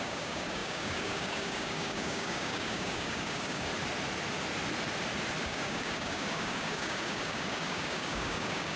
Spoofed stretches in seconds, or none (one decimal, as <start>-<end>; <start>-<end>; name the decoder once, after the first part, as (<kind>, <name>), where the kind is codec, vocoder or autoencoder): 0.0-3.7 (codec, DAC); 5.4-8.8